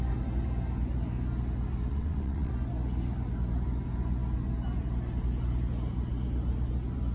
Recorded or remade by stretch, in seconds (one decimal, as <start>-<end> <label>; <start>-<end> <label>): 0.0-1.9 recorded; 1.9-2.5 remade; 2.5-7.1 recorded